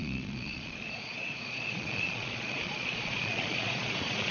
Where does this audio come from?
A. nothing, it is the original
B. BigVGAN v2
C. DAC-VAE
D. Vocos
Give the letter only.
D